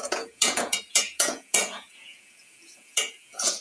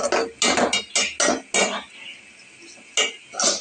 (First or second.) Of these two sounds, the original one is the second